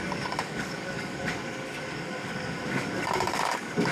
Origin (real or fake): fake